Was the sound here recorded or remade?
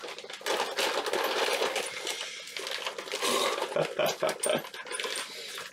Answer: recorded